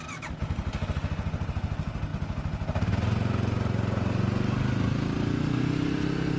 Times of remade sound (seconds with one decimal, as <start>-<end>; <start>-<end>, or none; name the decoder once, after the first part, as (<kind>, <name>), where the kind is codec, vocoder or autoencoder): none